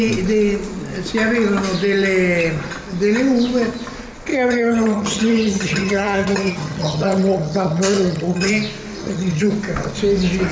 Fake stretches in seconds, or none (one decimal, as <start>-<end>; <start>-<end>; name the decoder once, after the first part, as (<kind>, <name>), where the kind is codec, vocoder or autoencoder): 4.3-8.5 (vocoder, HiFi-GAN); 9.0-9.5